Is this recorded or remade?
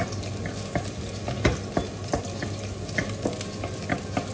recorded